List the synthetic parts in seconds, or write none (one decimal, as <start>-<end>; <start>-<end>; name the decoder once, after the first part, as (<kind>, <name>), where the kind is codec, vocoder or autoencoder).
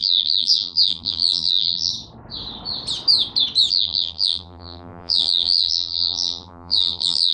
0.0-1.9 (vocoder, BigVGAN v2); 3.7-7.3